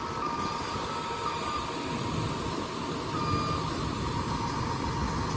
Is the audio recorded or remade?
recorded